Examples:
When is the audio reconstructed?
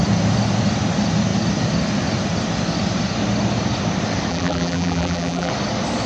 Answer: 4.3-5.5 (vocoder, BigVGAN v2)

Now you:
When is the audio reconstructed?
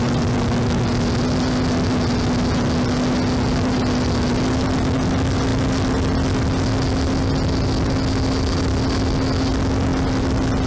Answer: none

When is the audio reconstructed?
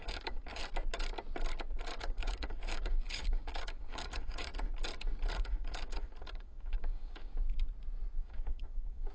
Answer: 0.0-0.6 (codec, DAC); 2.0-4.5; 5.3-7.3; 8.2-9.1